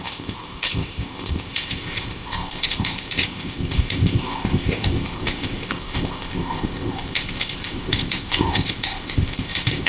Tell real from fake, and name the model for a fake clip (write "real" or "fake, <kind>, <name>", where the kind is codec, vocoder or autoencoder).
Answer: fake, codec, ZipCodec